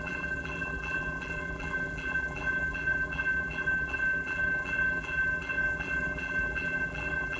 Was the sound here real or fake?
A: fake